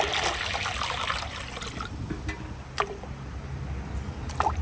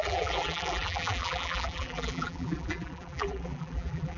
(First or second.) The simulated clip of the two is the second